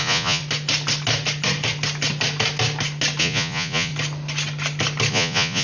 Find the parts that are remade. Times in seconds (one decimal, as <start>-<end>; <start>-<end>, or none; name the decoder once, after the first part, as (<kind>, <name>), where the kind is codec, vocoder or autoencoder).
0.0-0.4 (vocoder, Vocos); 3.2-3.9; 5.1-5.6